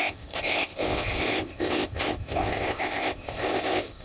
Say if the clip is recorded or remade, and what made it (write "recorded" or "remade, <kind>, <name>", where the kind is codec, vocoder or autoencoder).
remade, codec, ZipCodec